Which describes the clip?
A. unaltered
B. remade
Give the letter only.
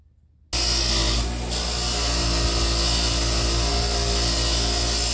A